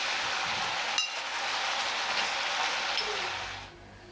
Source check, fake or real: real